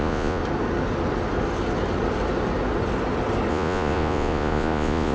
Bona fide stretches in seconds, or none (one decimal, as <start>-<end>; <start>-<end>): 0.4-3.5